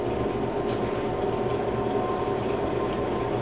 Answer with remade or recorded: recorded